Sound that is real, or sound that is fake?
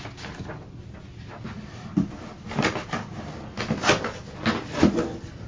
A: real